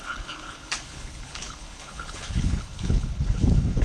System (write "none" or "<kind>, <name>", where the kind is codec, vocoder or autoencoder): codec, HILCodec